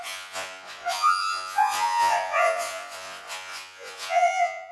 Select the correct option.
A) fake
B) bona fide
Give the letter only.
A